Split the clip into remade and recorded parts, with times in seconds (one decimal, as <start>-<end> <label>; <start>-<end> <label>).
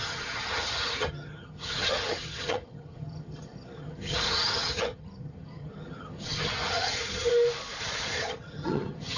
0.0-7.3 remade; 7.3-7.8 recorded; 7.8-9.2 remade